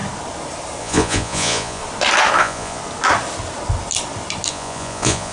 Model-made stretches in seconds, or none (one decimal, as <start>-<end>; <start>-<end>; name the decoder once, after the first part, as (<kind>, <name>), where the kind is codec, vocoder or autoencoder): 0.8-1.8 (vocoder, Vocos); 2.4-2.8; 4.5-5.3